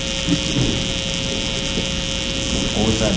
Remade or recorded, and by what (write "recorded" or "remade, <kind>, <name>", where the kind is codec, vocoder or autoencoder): recorded